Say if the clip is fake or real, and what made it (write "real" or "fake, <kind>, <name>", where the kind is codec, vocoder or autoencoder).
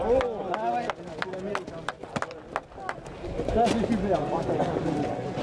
real